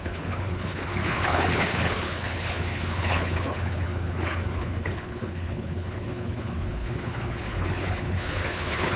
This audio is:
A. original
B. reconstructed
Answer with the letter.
B